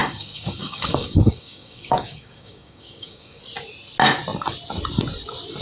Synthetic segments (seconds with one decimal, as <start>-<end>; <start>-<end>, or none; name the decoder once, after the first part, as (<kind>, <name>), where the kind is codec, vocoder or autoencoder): 0.0-3.4 (codec, DAC)